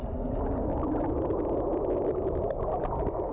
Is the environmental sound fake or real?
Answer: real